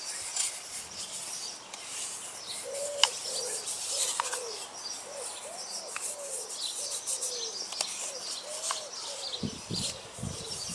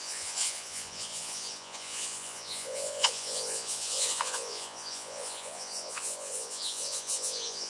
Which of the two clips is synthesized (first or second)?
second